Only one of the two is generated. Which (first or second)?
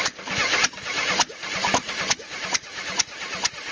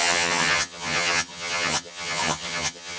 second